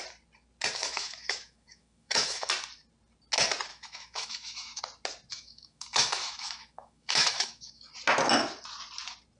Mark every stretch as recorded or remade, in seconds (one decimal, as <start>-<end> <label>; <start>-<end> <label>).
0.0-0.8 recorded; 0.8-2.5 remade; 2.5-3.7 recorded; 3.7-4.8 remade; 4.8-5.3 recorded; 5.3-7.9 remade; 7.9-9.4 recorded